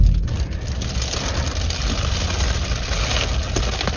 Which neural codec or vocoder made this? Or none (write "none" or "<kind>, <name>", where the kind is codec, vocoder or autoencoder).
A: none